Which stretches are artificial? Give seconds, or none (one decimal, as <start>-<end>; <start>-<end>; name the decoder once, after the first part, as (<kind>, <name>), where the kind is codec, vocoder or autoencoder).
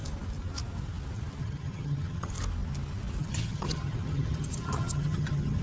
1.4-2.3 (vocoder, HiFi-GAN); 3.2-5.6